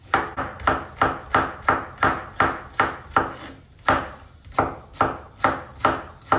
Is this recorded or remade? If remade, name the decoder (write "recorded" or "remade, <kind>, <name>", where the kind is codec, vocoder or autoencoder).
recorded